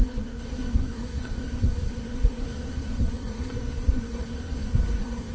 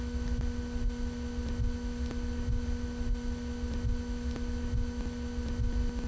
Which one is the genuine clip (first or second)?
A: second